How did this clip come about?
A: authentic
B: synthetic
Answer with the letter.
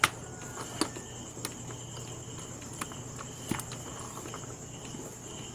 A